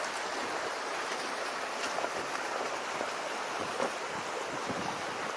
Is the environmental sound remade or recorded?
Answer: recorded